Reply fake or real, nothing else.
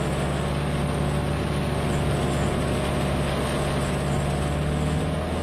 real